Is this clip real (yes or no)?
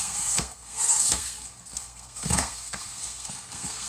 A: no